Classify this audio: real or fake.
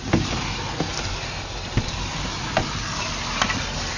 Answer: real